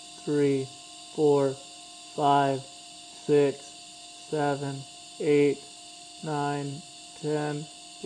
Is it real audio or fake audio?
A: real